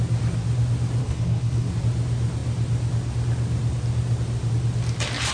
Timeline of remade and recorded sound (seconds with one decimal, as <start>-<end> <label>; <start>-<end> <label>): 0.0-1.0 recorded; 1.0-1.7 remade; 1.7-5.3 recorded